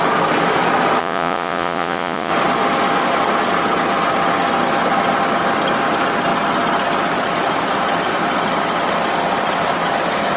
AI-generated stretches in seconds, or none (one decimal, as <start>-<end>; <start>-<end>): 1.0-2.3

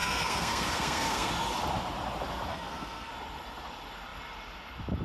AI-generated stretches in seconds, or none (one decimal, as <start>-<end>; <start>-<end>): 0.0-1.3; 2.5-3.1

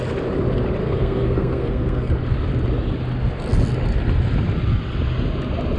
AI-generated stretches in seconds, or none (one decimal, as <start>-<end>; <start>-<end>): 0.8-2.1

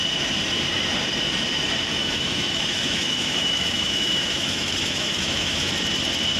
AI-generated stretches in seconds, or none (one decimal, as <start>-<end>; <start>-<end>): 1.9-5.7

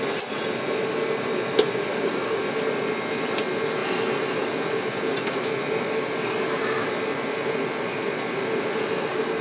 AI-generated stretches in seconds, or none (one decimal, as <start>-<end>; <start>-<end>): 1.9-2.4

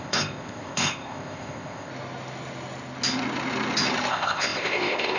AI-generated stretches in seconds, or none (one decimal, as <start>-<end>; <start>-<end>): 0.0-1.9; 4.1-5.2

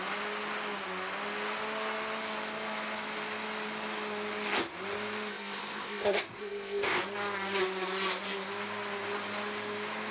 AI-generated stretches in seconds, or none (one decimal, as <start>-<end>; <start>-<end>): 5.3-7.0